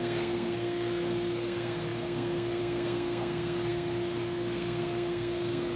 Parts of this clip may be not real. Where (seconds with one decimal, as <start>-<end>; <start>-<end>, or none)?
0.0-5.8